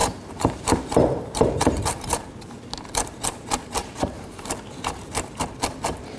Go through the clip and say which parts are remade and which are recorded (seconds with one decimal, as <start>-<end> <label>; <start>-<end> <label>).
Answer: 0.0-2.3 remade; 2.3-3.8 recorded; 3.8-4.5 remade; 4.5-6.2 recorded